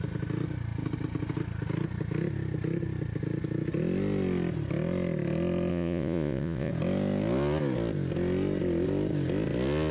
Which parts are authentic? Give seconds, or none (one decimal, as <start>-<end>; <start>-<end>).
0.0-5.7; 6.7-9.9